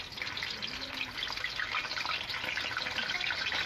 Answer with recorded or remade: recorded